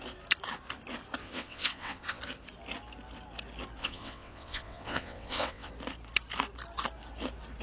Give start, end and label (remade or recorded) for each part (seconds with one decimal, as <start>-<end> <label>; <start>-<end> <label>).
0.0-1.2 recorded; 1.2-2.2 remade; 2.2-3.8 recorded; 3.8-5.7 remade; 5.7-7.6 recorded